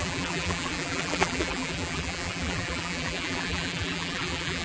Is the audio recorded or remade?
remade